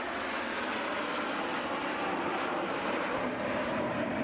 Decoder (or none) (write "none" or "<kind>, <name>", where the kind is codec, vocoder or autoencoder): none